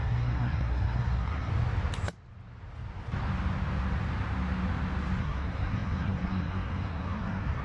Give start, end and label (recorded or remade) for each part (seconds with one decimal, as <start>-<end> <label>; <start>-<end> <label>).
0.0-1.5 remade; 1.5-5.2 recorded; 5.2-7.6 remade

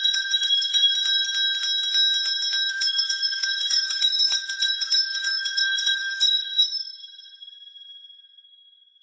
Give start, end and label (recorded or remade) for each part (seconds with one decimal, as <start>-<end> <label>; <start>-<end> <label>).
0.0-0.9 remade; 0.9-2.7 recorded; 2.7-9.0 remade

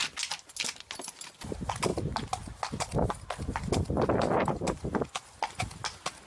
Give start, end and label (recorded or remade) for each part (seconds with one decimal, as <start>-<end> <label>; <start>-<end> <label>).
0.0-6.3 recorded

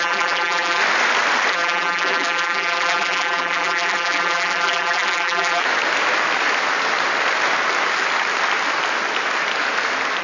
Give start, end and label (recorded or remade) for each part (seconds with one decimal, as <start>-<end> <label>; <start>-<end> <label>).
0.0-0.8 remade; 0.8-1.5 recorded; 1.5-5.6 remade; 5.6-10.2 recorded

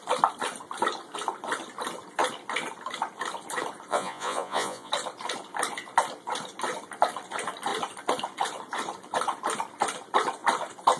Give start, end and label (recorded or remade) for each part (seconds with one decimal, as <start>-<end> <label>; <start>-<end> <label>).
0.0-3.9 recorded; 3.9-4.9 remade; 4.9-11.0 recorded

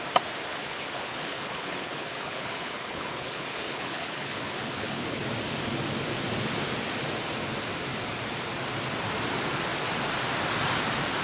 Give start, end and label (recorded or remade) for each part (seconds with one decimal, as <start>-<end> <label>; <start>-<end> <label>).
0.0-0.5 recorded; 0.5-5.2 remade; 5.2-11.2 recorded